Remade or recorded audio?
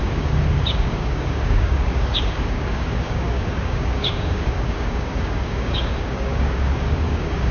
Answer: remade